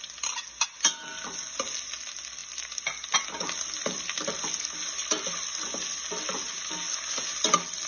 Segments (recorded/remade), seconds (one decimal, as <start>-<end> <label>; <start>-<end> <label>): 0.0-7.9 recorded